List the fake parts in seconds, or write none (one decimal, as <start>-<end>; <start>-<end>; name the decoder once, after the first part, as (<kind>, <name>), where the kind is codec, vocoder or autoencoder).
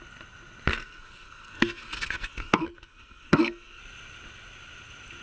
0.7-3.8 (codec, SNAC)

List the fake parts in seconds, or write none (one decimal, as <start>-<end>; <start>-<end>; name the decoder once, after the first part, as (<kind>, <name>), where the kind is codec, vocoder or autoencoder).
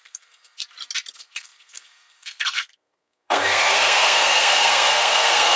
0.0-0.6 (codec, SNAC); 1.1-5.6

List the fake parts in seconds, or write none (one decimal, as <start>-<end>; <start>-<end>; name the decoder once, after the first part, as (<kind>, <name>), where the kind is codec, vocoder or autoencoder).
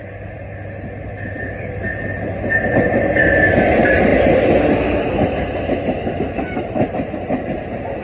none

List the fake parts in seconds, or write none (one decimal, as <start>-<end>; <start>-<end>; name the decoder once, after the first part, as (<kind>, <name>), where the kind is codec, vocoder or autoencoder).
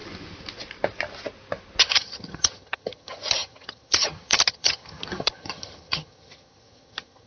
1.8-7.3 (vocoder, HiFi-GAN)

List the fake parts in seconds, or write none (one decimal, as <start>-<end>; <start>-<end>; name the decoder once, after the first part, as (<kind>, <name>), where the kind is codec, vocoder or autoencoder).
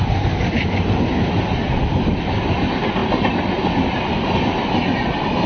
none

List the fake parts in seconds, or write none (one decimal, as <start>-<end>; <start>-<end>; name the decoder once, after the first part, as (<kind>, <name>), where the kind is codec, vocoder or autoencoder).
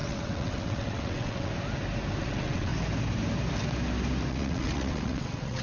0.0-1.5 (vocoder, WaveNeXt); 2.2-2.7; 4.3-5.6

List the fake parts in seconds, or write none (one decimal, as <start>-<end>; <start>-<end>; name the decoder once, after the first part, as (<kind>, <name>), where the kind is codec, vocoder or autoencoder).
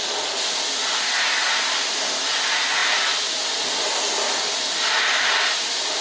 none